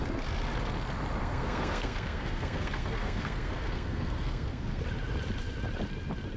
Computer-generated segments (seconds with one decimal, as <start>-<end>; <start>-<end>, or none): 1.2-4.8